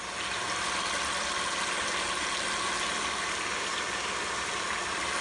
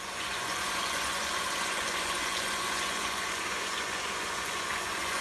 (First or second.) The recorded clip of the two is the first